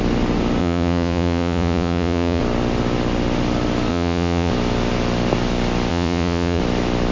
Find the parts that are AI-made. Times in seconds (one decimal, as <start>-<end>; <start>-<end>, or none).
0.6-2.4; 3.9-4.5; 5.9-6.6